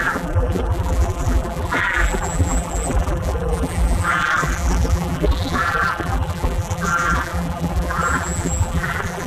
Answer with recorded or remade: remade